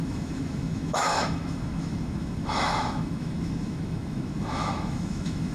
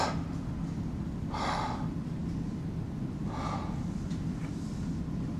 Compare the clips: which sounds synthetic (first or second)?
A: first